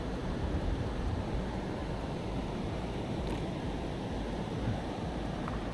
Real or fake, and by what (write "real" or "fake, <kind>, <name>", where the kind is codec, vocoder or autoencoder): fake, vocoder, BigVGAN v2